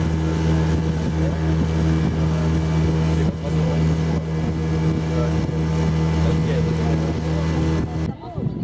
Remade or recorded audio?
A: recorded